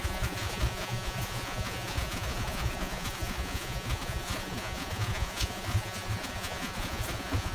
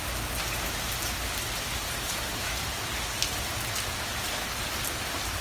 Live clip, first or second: second